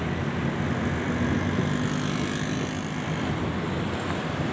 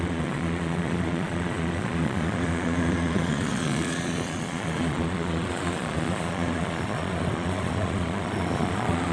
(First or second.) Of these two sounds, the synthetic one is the second